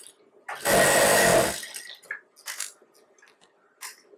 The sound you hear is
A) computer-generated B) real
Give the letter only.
B